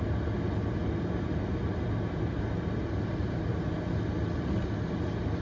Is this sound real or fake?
real